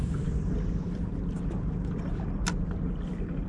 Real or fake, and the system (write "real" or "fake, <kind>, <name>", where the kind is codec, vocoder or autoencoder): real